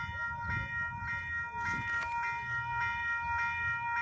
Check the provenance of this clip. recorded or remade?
recorded